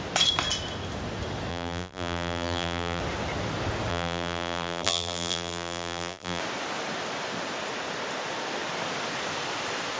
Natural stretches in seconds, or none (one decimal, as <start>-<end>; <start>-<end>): 0.0-1.5; 3.0-3.9; 6.4-10.0

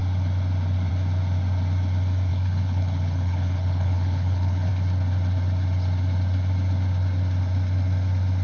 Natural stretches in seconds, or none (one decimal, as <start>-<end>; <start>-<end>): 0.0-2.3; 4.7-8.4

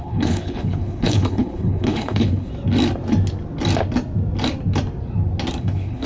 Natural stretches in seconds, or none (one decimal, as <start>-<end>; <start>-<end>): 2.5-5.6

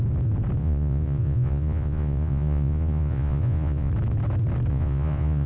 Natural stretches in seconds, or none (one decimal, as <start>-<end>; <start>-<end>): 0.0-0.6; 3.9-4.7

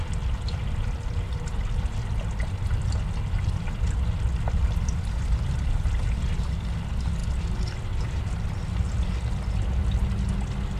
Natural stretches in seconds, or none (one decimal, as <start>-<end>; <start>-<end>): 0.0-10.8

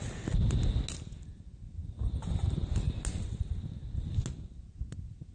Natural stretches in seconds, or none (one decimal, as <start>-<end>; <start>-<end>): 0.0-5.3

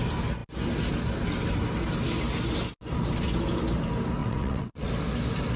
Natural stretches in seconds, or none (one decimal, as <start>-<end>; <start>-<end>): 0.0-4.2; 4.9-5.6

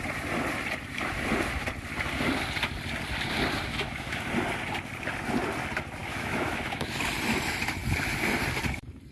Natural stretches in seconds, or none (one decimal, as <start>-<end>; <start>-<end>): 0.0-3.7; 4.2-6.0; 7.0-9.1